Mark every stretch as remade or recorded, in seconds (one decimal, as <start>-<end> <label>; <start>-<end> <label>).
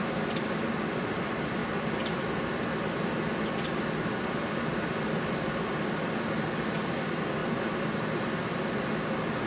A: 0.0-9.5 recorded